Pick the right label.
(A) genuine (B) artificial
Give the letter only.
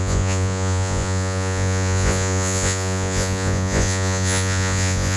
B